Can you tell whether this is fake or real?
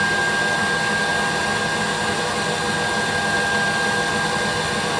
real